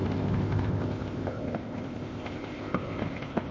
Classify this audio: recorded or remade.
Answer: remade